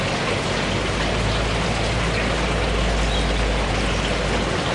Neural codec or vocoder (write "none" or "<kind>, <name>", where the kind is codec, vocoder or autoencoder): none